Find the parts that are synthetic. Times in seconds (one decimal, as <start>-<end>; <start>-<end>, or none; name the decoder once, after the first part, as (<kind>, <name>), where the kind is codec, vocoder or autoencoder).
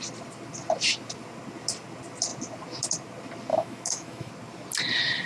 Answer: 3.5-4.3 (autoencoder, DAC-VAE)